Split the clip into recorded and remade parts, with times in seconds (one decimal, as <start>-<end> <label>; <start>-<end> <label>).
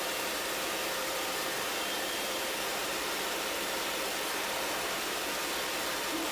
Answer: 0.0-5.2 remade; 5.2-5.7 recorded; 5.7-6.3 remade